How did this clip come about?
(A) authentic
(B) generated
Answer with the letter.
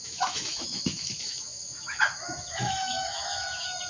B